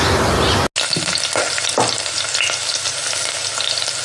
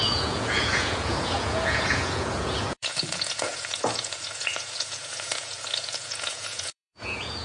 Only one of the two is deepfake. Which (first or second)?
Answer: second